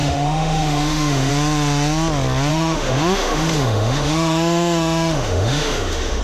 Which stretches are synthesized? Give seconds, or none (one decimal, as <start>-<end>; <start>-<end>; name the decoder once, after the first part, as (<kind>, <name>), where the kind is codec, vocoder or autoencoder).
0.0-1.3 (autoencoder, DAC-VAE); 2.5-6.2